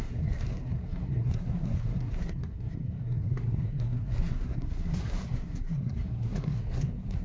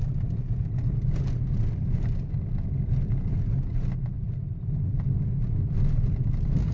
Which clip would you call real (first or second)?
second